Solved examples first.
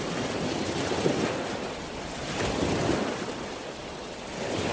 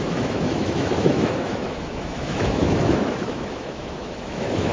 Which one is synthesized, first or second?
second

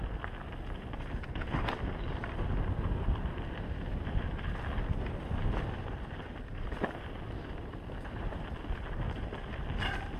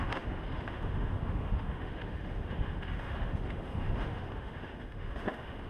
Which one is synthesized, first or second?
second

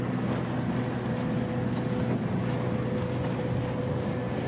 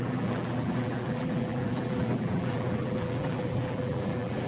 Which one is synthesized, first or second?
second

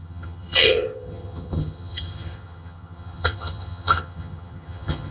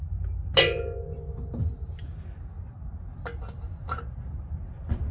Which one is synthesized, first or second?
first